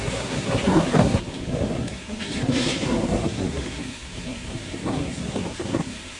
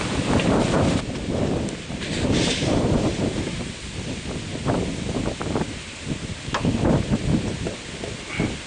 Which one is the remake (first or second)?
first